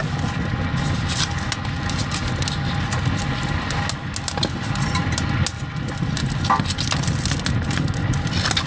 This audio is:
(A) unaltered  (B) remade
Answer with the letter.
A